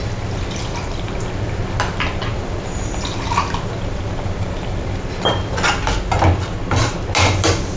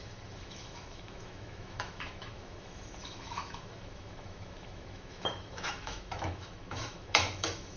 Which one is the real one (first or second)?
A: first